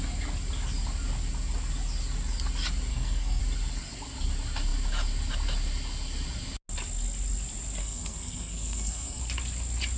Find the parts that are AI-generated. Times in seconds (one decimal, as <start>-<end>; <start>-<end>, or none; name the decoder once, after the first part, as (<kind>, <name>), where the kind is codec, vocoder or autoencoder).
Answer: 2.9-3.4 (codec, SNAC); 7.8-9.2

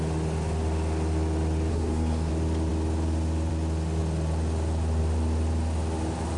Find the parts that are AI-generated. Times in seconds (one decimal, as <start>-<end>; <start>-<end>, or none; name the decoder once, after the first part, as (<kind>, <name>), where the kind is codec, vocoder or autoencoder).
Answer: 1.7-2.3 (codec, SNAC)

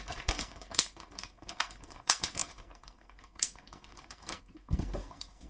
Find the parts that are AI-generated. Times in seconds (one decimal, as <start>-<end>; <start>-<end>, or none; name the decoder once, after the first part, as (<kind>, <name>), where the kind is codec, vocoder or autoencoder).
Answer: 0.0-5.5 (codec, SNAC)